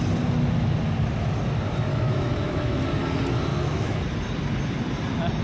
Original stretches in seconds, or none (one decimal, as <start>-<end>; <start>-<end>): 0.0-1.9; 2.8-3.5; 4.0-5.4